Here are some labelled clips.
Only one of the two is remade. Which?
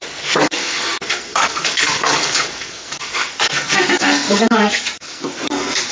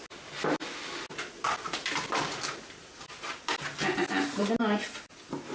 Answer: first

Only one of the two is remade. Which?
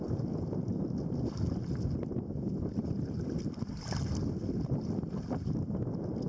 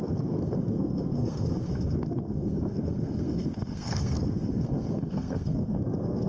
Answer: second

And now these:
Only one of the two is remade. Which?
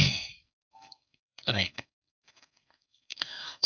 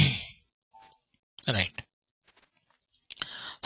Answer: first